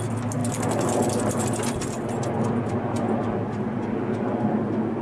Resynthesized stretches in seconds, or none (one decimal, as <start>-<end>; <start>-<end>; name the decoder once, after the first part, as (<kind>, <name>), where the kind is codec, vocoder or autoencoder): none